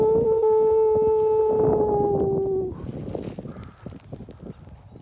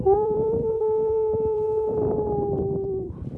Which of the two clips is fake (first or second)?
second